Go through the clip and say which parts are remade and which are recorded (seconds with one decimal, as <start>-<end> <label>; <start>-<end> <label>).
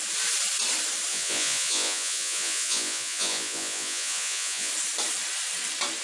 0.0-1.1 recorded; 1.1-4.7 remade; 4.7-6.0 recorded